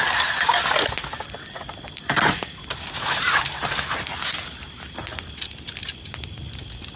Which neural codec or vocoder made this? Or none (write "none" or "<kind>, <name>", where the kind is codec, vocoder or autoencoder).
none